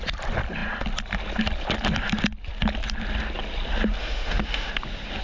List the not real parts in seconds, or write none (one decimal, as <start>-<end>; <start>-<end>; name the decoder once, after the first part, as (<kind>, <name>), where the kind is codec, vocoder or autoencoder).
4.0-4.7 (autoencoder, DAC-VAE)